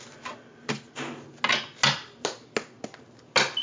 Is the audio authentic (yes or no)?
yes